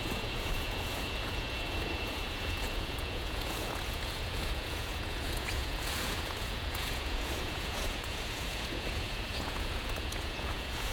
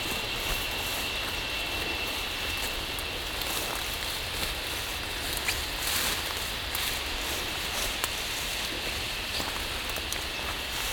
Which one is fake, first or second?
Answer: first